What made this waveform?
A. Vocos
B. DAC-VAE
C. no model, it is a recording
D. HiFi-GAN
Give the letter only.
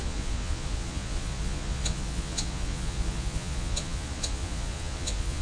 A